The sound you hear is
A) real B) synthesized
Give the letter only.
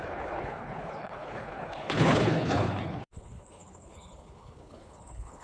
B